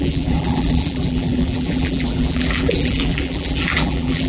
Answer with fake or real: fake